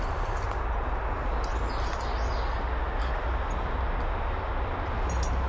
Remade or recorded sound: recorded